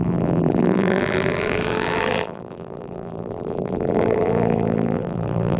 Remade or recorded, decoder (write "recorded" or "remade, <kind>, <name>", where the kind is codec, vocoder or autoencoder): remade, vocoder, BigVGAN v2